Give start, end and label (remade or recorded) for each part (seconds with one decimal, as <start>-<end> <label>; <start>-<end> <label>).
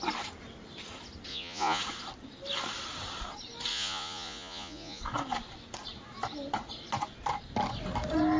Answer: 0.0-1.3 recorded; 1.3-1.8 remade; 1.8-3.7 recorded; 3.7-5.0 remade; 5.0-8.4 recorded